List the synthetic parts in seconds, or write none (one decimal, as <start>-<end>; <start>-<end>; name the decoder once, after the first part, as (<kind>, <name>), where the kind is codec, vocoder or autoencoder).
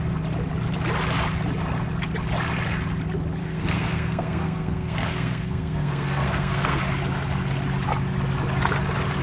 3.4-6.8 (codec, SNAC)